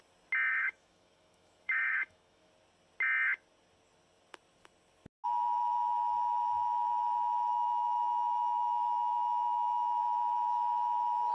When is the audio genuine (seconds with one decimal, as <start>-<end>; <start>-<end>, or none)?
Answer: 0.0-0.5; 2.5-7.5; 10.0-11.3